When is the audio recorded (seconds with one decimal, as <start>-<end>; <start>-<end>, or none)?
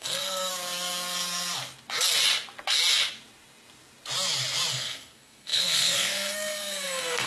0.5-4.7